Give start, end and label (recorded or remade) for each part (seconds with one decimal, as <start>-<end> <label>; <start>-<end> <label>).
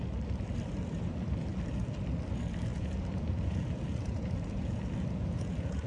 0.0-2.7 recorded; 2.7-5.9 remade